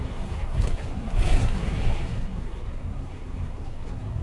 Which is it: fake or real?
fake